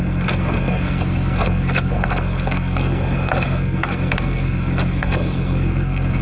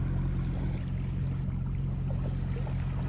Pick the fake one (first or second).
first